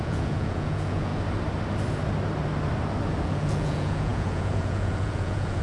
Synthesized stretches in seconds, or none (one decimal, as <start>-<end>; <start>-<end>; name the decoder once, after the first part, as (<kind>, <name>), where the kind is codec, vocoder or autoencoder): 0.0-1.1 (vocoder, Vocos); 3.2-5.6